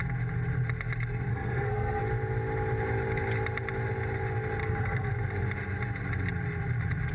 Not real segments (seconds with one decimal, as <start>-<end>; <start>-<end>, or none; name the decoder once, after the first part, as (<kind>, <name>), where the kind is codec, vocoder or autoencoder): 1.3-2.0 (codec, SNAC); 4.6-5.1